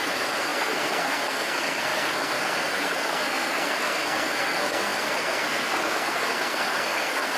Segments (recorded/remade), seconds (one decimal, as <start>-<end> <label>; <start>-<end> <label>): 0.0-7.4 remade